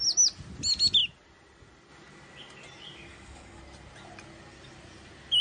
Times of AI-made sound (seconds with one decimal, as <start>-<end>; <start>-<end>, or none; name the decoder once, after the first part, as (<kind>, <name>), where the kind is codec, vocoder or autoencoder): 3.1-3.6 (codec, DAC)